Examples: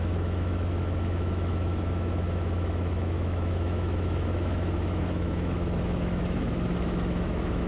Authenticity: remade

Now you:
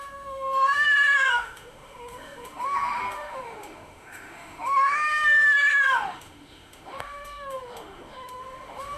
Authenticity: remade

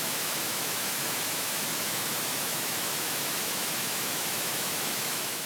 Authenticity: remade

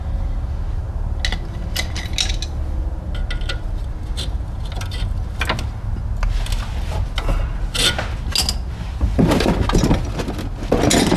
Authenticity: recorded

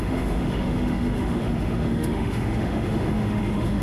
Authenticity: remade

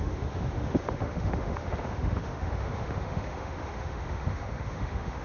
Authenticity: remade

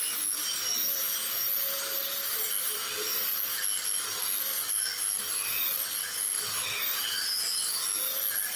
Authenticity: recorded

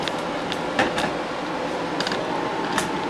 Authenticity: recorded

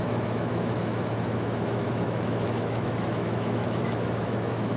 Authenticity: remade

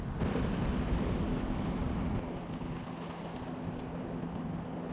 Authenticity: recorded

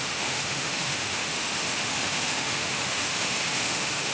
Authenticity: remade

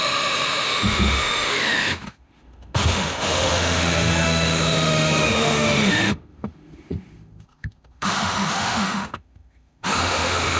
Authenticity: remade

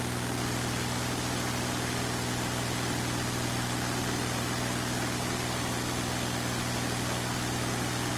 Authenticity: recorded